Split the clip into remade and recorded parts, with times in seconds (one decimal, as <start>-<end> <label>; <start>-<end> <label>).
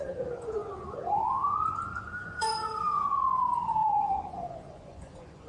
0.0-5.5 remade